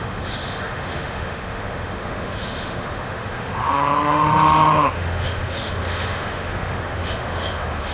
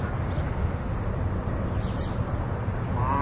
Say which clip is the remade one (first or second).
first